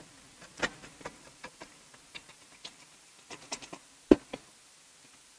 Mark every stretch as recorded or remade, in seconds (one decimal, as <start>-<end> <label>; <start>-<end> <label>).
0.0-0.8 recorded; 0.8-3.8 remade; 3.8-5.4 recorded